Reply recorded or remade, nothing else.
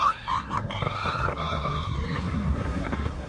remade